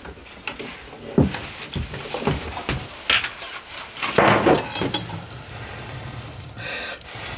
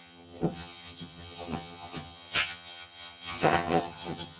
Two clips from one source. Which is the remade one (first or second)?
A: second